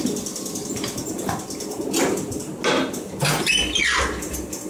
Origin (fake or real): real